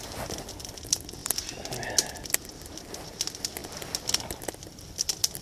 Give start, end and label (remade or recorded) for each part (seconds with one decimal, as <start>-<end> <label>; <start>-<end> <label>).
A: 0.0-5.4 recorded